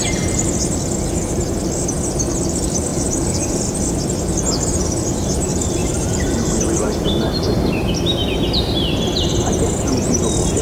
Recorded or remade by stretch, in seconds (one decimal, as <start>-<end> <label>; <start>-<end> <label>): 0.0-2.9 recorded; 2.9-3.7 remade; 3.7-5.8 recorded; 5.8-6.6 remade; 6.6-10.6 recorded